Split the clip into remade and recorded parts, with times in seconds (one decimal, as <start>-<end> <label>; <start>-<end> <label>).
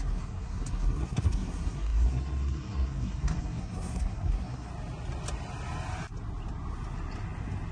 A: 0.0-4.7 remade; 4.7-7.7 recorded